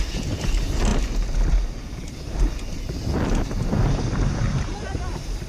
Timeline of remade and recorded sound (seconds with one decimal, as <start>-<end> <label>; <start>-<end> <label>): 0.0-5.5 recorded